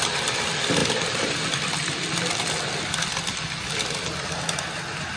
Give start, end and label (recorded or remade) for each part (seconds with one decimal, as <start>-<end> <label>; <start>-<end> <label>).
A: 0.0-5.2 recorded